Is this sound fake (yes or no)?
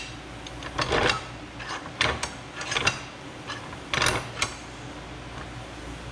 no